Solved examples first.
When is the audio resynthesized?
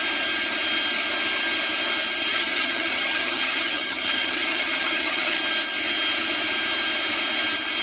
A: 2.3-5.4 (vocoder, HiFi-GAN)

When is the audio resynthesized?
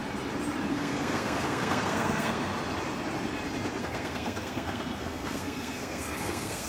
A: 0.7-2.5 (codec, SNAC); 3.8-6.7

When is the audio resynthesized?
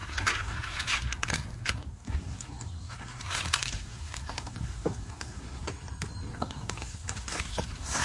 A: 0.0-5.7 (codec, SNAC); 6.3-8.0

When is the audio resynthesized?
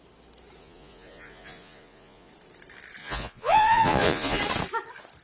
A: 0.6-2.3 (vocoder, Vocos); 3.0-4.4